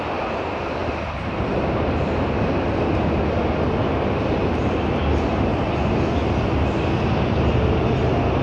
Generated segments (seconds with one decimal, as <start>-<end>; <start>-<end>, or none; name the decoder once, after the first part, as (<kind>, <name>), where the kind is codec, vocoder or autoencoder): 0.8-3.2 (vocoder, BigVGAN v2)